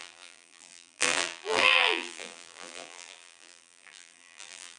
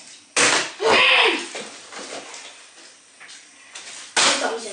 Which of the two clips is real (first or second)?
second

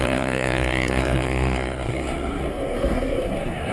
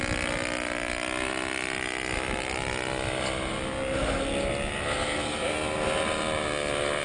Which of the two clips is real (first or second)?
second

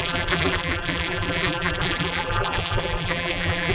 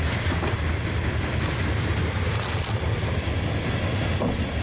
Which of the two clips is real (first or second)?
second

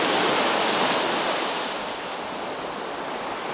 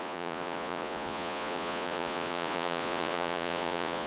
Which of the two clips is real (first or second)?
first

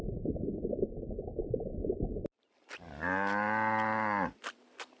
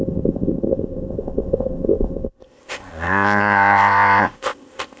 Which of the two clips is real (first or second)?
first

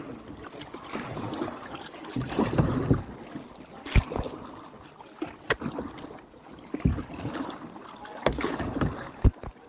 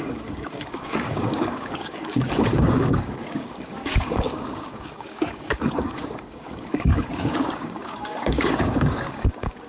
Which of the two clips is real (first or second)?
first